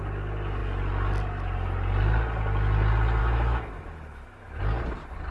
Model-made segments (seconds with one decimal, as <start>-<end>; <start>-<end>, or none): 3.2-4.6